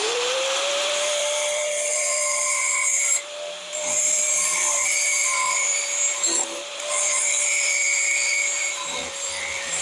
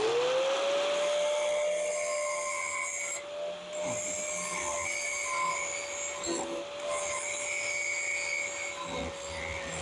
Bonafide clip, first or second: second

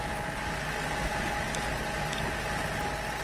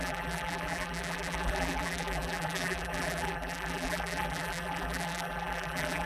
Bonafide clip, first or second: first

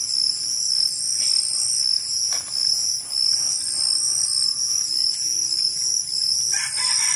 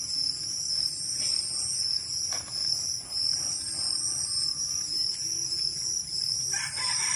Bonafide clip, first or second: first